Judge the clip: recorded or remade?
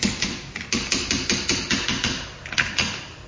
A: recorded